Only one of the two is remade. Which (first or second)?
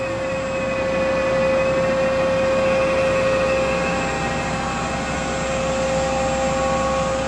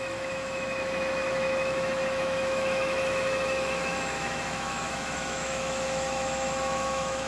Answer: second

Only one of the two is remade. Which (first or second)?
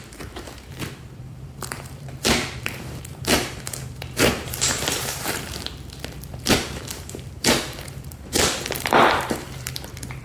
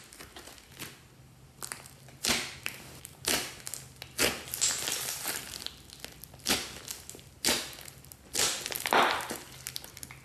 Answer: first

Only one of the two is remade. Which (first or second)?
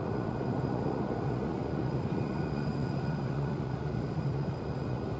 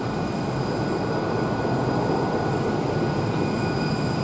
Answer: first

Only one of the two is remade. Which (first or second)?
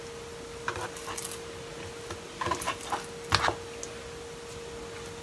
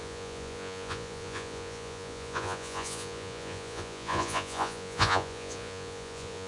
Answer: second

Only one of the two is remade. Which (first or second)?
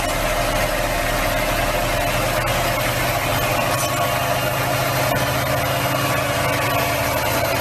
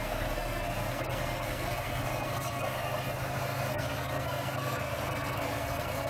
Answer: second